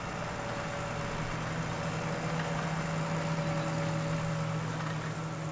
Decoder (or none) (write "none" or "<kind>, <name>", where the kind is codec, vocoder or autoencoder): none